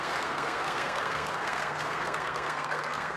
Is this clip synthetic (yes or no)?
yes